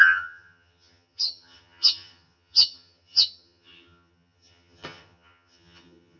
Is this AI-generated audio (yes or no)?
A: yes